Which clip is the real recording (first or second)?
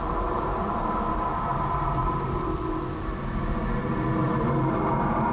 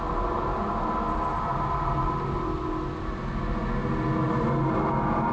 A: second